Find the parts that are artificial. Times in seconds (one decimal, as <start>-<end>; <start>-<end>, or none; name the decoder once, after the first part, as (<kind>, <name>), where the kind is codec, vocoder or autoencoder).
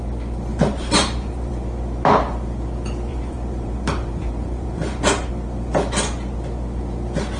0.5-1.5 (vocoder, BigVGAN v2); 3.1-5.3